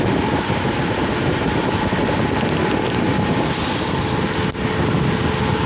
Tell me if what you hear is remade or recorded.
recorded